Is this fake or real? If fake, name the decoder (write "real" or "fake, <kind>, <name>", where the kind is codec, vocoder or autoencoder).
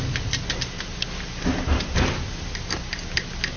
real